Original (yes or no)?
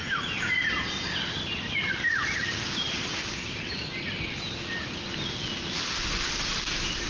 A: yes